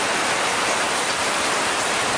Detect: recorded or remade recorded